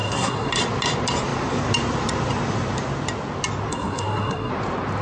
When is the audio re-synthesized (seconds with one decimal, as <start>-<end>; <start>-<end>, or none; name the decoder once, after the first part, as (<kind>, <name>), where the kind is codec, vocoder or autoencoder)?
0.0-0.5 (codec, SNAC); 3.7-4.5